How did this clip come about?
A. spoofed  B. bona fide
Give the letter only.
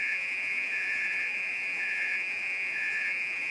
A